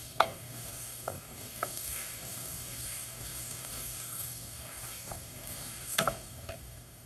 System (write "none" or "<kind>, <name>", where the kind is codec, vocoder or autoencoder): codec, DAC